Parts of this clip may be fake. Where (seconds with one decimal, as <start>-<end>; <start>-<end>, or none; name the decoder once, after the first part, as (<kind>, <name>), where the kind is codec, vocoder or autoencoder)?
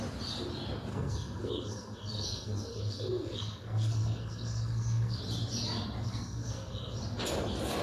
0.9-5.2 (codec, SNAC); 6.0-7.0